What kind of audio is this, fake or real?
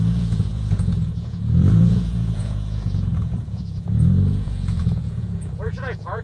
fake